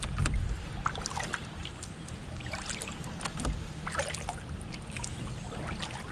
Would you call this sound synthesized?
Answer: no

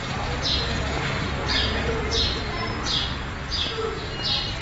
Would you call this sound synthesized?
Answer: no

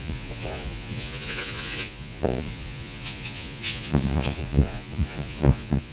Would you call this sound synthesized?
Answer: yes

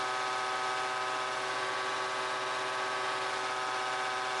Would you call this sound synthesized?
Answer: no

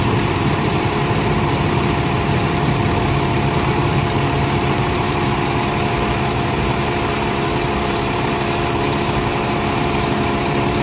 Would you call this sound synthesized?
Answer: yes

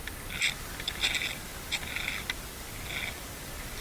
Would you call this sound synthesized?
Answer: no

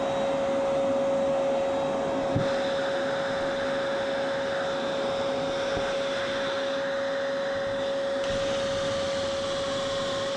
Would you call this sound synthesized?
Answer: no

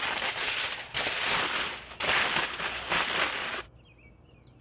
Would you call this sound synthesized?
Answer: no